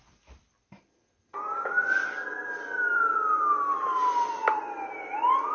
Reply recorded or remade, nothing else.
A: recorded